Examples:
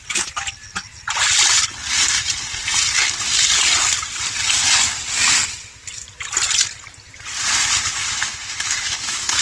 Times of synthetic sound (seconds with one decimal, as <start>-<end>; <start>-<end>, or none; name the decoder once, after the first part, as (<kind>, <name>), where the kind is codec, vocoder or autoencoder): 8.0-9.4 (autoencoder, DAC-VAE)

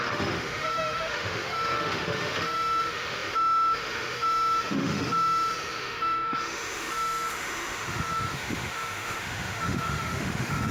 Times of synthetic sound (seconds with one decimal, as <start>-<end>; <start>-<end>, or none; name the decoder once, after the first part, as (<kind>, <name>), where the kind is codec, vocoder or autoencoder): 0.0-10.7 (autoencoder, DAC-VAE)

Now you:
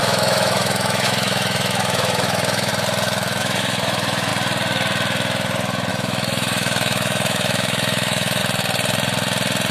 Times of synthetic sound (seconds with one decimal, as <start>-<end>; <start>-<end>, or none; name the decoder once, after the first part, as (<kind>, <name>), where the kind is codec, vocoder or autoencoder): 0.0-2.7 (autoencoder, DAC-VAE); 3.4-4.3; 5.9-8.4